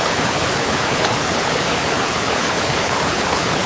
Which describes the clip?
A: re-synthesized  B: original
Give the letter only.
A